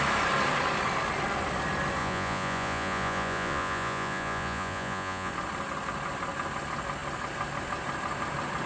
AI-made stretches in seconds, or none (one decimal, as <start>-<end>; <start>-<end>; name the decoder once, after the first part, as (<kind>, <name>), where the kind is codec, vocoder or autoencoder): 2.0-5.3 (vocoder, Vocos)